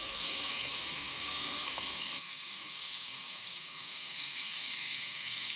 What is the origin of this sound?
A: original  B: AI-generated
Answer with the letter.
B